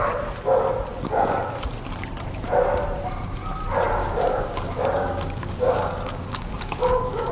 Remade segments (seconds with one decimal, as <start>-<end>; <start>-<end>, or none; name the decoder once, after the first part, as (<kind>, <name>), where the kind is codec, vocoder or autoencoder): 4.0-7.3 (codec, DAC)